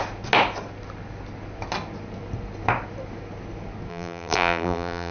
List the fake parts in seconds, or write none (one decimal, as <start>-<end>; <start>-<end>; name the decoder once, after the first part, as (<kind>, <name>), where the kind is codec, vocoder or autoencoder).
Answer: 3.9-5.1 (vocoder, BigVGAN v2)